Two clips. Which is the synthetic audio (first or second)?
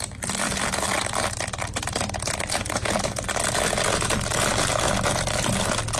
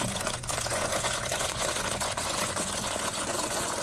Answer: second